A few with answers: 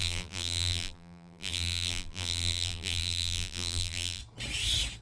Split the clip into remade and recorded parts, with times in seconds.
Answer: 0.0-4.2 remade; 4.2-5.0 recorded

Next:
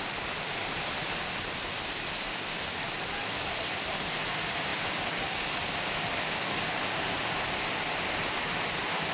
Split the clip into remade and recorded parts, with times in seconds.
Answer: 0.0-4.7 recorded; 4.7-7.2 remade; 7.2-9.1 recorded

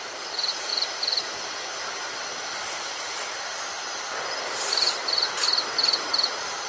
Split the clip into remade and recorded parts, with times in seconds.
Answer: 0.0-0.7 remade; 0.7-4.7 recorded; 4.7-6.7 remade

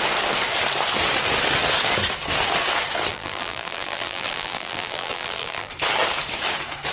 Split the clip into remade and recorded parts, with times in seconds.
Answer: 0.0-3.1 recorded; 3.1-5.7 remade; 5.7-6.9 recorded

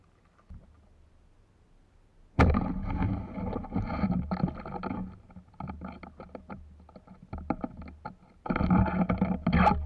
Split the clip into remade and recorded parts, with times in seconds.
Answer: 0.0-9.9 recorded

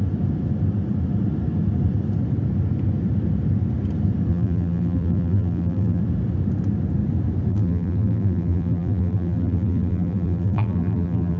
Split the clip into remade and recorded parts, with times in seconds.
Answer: 0.0-4.3 recorded; 4.3-6.0 remade; 6.0-7.5 recorded; 7.5-11.4 remade